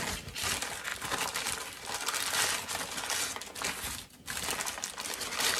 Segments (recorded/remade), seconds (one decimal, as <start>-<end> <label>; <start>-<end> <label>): 0.0-5.6 recorded